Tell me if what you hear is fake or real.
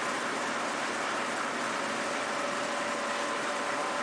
real